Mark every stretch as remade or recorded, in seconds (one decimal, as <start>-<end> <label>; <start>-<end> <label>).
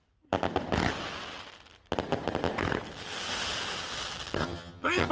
0.0-4.4 recorded; 4.4-5.1 remade